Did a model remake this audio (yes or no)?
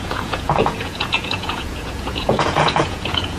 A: yes